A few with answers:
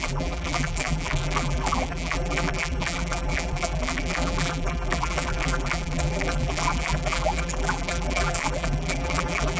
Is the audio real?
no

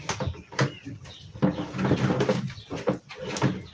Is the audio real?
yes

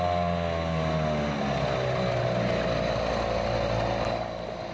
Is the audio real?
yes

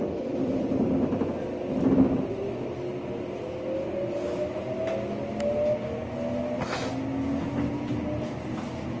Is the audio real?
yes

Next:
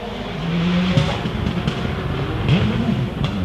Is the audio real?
yes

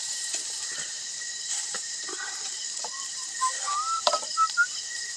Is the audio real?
no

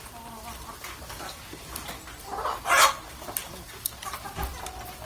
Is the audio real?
yes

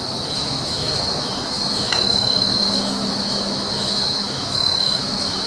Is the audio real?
no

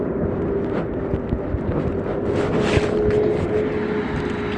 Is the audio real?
yes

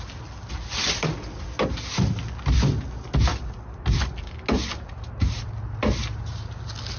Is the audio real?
yes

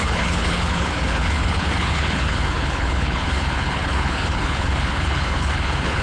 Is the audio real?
no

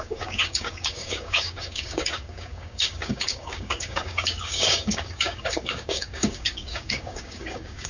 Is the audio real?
no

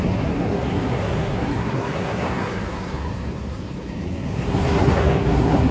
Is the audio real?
no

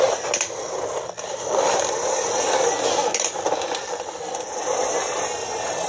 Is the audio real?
yes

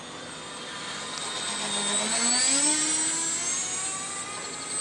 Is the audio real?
yes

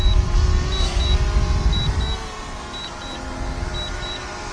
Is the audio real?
yes